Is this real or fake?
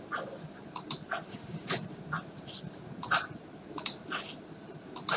fake